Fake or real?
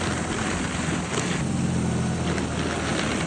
real